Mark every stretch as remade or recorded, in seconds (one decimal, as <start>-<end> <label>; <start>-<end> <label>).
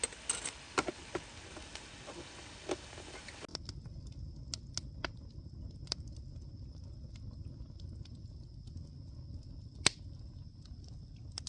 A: 0.0-11.5 recorded